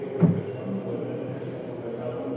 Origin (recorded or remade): recorded